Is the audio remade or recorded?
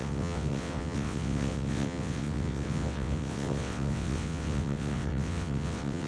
remade